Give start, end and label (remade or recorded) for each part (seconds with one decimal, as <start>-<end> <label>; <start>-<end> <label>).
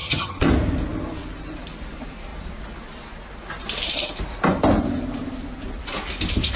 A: 0.0-0.5 remade; 0.5-6.6 recorded